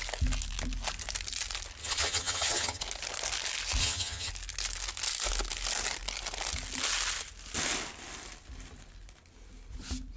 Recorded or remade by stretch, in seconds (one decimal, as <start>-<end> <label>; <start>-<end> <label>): 0.0-1.8 recorded; 1.8-2.8 remade; 2.8-3.8 recorded; 3.8-4.3 remade; 4.3-10.2 recorded

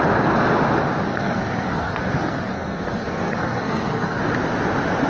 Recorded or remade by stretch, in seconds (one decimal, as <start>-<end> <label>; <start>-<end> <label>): 0.0-1.1 recorded; 1.1-4.2 remade; 4.2-5.1 recorded

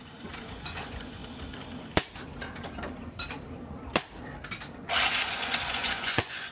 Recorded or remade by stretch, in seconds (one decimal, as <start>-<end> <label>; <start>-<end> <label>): 0.0-1.2 remade; 1.2-5.1 recorded; 5.1-6.5 remade

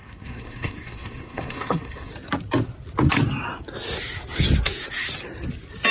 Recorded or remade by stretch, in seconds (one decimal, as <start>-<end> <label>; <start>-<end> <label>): 0.0-2.1 remade; 2.1-5.9 recorded

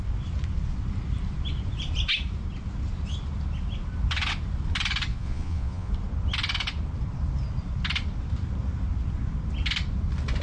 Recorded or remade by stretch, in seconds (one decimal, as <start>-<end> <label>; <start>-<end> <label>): 0.0-5.1 recorded; 5.1-5.9 remade; 5.9-10.4 recorded